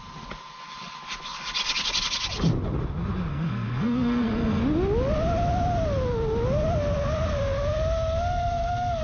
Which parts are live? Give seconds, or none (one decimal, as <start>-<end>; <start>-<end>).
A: 0.0-3.3; 4.6-9.0